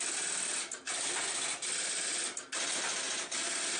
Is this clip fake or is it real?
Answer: real